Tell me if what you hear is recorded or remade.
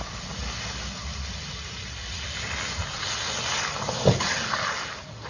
recorded